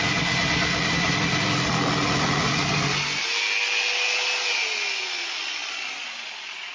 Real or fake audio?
real